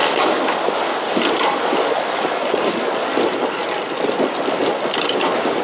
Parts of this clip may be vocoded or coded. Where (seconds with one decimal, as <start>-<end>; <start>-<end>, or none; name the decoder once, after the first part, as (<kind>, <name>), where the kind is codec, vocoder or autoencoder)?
0.0-3.2 (vocoder, BigVGAN v2); 3.6-4.6